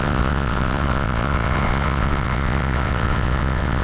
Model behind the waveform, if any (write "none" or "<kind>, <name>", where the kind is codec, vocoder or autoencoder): vocoder, WaveNeXt